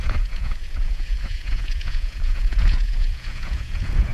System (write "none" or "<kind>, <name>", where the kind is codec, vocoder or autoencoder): vocoder, Vocos